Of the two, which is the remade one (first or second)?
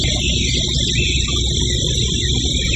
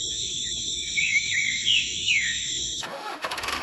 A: second